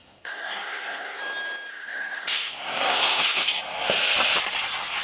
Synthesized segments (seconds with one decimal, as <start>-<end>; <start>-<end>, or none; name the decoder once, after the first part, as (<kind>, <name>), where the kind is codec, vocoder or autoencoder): 0.0-1.2 (codec, SNAC); 1.7-3.6